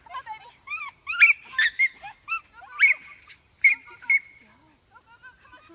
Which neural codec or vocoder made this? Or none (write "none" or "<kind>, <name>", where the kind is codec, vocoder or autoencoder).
none